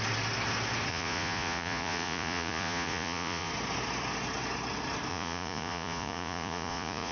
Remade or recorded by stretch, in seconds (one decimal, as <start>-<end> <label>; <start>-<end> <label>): 0.0-0.9 recorded; 0.9-3.5 remade; 3.5-5.1 recorded; 5.1-7.1 remade